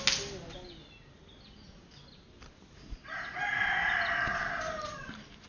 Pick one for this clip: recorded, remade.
recorded